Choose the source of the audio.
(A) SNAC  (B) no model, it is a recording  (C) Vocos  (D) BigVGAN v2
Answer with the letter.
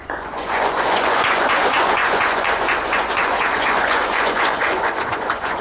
C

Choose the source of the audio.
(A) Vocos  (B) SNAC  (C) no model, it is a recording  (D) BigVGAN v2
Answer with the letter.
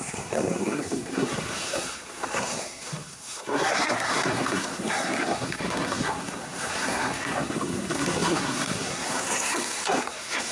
B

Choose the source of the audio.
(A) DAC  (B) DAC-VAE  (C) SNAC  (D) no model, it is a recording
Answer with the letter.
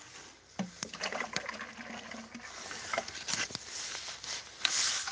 D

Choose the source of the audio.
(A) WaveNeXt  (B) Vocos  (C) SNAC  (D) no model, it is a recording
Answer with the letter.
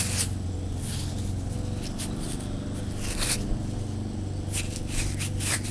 D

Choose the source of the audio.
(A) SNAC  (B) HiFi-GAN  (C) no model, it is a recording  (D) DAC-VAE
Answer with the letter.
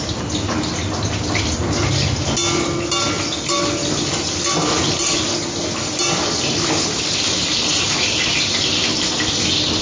C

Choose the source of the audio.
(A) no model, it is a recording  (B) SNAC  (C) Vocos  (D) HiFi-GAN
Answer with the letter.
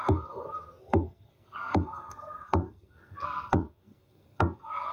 B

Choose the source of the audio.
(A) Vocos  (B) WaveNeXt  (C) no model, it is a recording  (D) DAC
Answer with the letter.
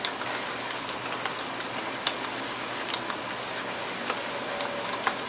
C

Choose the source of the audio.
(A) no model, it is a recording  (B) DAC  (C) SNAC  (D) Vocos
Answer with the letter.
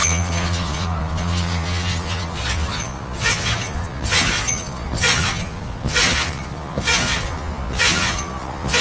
D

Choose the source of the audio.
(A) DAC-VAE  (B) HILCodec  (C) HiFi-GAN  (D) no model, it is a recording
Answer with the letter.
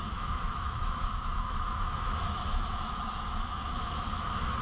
A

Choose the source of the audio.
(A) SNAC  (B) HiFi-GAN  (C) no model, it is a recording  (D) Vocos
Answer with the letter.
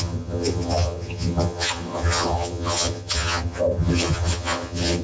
B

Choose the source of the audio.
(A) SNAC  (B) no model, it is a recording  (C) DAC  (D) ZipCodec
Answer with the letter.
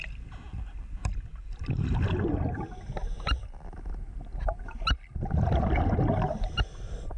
B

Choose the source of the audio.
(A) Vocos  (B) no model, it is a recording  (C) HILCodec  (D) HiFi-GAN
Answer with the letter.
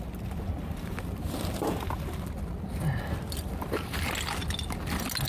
B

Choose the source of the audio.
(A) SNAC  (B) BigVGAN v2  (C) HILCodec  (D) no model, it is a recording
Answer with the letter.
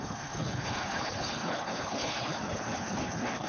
C